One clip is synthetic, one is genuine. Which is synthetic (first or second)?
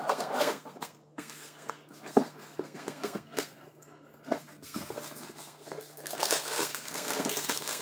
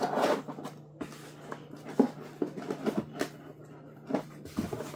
first